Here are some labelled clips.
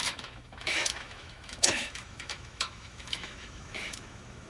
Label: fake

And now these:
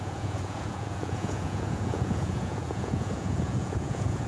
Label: fake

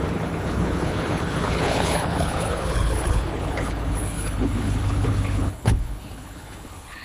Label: fake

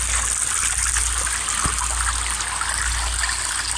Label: real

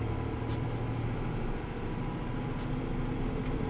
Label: real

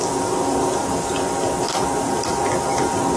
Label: real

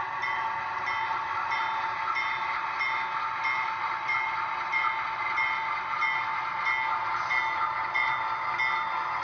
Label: real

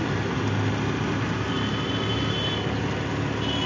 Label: real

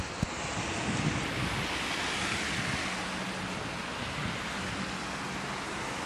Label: real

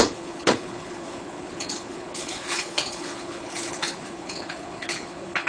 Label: fake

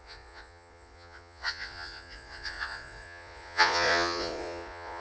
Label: fake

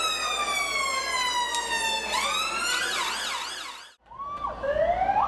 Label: real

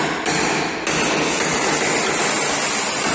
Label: real